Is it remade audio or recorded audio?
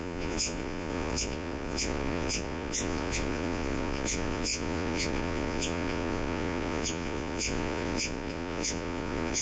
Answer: remade